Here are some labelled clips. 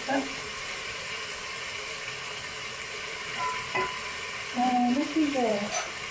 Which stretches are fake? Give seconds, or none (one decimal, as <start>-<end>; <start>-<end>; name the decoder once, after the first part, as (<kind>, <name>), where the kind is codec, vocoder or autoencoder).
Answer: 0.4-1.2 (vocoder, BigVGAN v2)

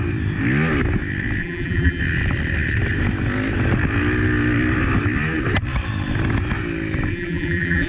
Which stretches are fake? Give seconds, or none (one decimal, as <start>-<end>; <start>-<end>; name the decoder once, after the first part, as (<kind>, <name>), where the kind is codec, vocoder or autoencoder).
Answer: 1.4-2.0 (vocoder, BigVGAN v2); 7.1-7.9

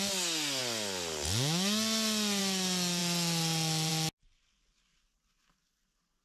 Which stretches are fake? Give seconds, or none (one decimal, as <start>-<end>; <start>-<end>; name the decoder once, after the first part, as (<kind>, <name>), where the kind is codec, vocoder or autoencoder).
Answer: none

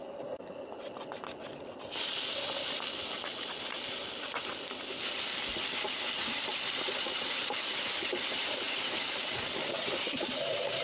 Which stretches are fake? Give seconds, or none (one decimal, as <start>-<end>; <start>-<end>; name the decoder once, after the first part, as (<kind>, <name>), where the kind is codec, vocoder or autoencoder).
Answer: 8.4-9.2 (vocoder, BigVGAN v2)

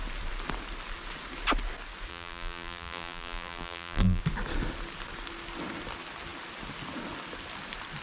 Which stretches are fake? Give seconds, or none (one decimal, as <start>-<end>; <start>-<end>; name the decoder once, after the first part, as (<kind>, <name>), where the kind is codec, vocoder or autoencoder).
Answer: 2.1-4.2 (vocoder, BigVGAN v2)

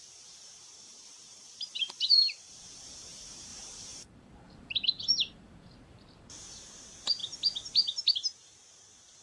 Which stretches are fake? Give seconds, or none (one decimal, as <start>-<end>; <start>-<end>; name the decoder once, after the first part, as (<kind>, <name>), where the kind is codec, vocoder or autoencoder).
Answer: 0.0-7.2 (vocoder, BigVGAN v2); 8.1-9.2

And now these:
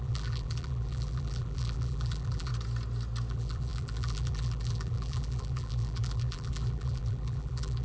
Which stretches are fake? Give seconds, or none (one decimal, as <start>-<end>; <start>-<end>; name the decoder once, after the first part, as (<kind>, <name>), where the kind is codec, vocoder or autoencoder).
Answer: 0.0-2.5 (vocoder, BigVGAN v2); 3.3-7.8